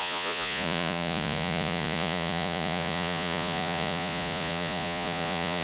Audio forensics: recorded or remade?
remade